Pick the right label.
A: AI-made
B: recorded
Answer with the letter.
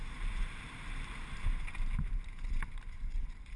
A